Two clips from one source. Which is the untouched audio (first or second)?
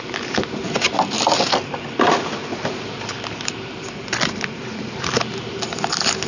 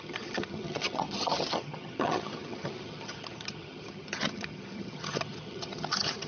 first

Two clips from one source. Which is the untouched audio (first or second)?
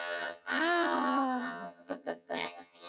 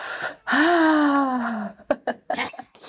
second